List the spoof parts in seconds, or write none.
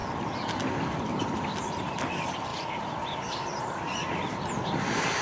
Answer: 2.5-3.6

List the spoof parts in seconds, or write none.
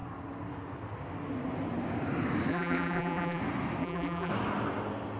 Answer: 2.5-3.4; 3.8-4.3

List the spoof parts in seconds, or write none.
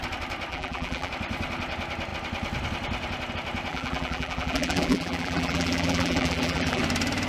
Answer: 0.5-1.1; 3.7-6.8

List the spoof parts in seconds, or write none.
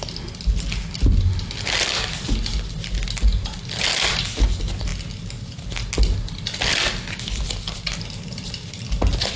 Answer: none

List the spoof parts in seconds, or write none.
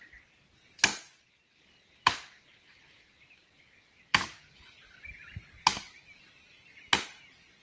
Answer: 0.9-1.6